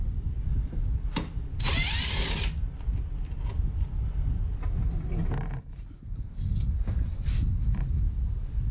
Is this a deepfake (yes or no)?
no